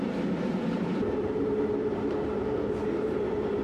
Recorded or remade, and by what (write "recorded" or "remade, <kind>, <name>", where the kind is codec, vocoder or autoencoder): remade, vocoder, BigVGAN v2